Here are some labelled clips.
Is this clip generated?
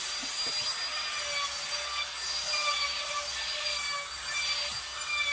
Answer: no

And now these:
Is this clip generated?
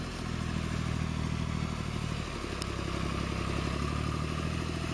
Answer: no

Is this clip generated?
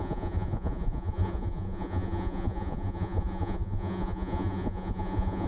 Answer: yes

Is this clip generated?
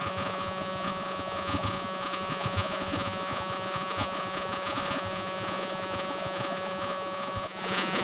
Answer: yes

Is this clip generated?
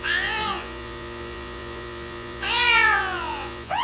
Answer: yes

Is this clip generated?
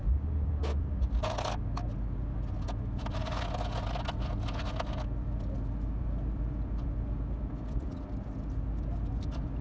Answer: no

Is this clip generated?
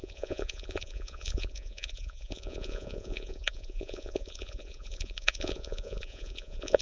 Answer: yes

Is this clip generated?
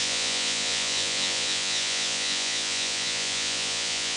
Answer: yes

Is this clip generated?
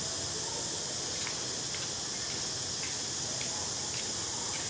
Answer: no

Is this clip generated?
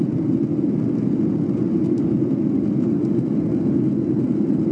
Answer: no